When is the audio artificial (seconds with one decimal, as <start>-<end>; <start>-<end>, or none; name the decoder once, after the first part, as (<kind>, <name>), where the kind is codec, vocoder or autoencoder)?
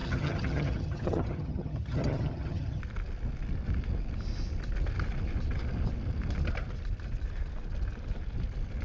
0.0-2.8 (vocoder, HiFi-GAN)